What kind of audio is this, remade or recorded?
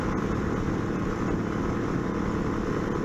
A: recorded